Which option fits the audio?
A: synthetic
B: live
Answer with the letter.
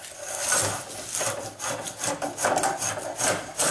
B